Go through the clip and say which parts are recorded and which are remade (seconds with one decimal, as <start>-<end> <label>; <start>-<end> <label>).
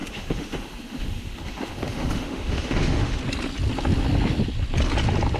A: 0.0-3.2 remade; 3.2-5.4 recorded